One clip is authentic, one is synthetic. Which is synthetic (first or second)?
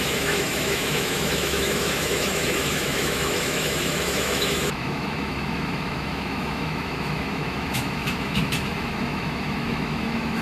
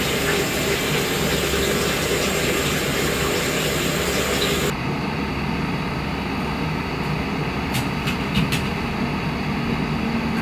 first